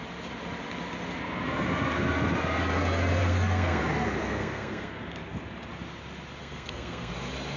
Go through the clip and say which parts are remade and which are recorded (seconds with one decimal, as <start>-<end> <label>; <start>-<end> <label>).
0.0-3.2 recorded; 3.2-3.8 remade; 3.8-4.2 recorded; 4.2-5.0 remade; 5.0-6.4 recorded; 6.4-7.1 remade; 7.1-7.6 recorded